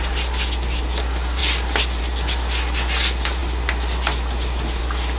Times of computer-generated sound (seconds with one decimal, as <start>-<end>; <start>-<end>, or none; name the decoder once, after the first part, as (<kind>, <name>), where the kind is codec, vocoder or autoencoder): none